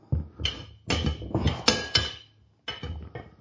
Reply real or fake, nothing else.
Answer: real